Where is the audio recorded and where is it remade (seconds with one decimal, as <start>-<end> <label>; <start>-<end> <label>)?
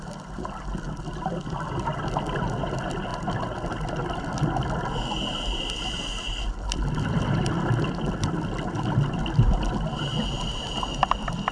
0.0-11.5 recorded